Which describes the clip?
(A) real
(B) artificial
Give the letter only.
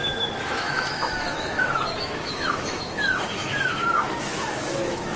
B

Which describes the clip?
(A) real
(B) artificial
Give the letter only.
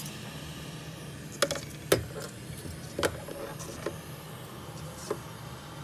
A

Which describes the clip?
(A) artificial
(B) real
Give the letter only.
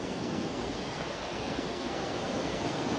A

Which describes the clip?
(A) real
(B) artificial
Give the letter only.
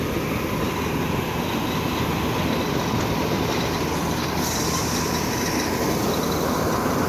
A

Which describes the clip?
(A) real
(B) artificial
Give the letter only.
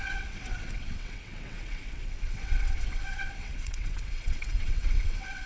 B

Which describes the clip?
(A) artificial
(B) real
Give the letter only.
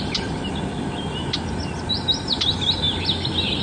B